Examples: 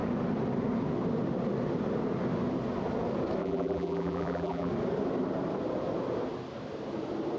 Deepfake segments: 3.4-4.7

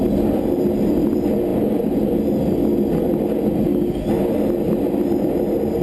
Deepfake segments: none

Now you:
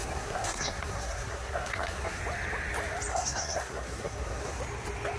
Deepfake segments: 0.0-2.2; 3.1-4.6

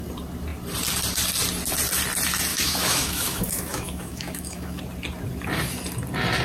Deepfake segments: 2.5-4.8